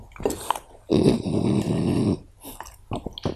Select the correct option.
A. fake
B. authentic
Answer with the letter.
B